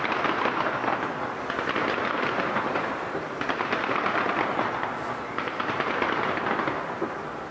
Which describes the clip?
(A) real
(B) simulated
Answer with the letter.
A